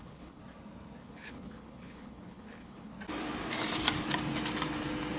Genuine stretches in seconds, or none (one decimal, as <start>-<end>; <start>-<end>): 0.4-1.0; 2.9-5.2